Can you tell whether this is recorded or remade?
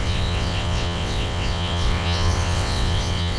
remade